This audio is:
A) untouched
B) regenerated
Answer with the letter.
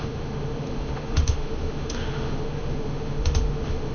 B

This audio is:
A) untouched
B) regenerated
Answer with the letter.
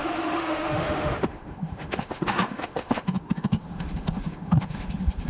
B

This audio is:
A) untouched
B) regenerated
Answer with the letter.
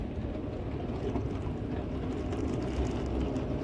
A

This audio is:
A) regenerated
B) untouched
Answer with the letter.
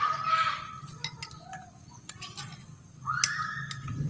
B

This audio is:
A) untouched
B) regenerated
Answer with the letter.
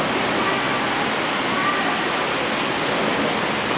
A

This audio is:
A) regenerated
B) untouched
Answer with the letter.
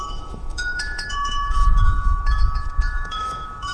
A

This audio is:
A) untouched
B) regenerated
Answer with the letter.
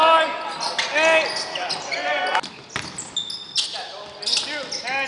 A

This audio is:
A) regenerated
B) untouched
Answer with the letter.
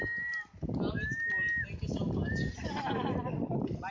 B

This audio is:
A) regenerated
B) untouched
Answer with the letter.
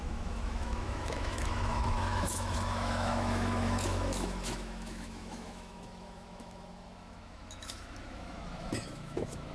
A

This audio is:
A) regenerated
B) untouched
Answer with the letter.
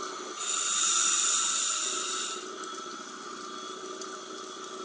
B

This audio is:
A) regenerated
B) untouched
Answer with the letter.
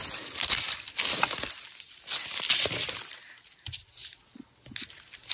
B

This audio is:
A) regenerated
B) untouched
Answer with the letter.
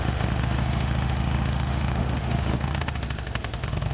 A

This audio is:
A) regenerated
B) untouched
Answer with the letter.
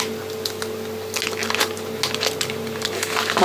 B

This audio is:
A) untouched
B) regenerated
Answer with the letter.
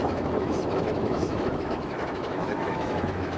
B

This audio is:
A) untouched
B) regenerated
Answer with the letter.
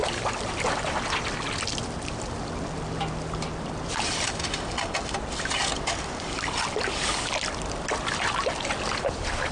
A